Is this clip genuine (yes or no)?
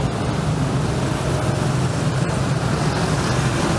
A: yes